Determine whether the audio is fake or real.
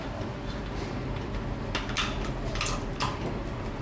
real